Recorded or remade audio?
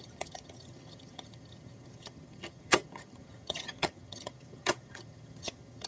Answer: remade